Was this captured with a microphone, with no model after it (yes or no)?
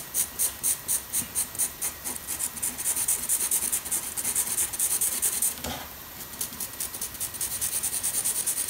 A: yes